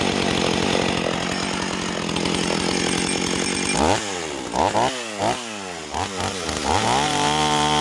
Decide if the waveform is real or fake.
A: real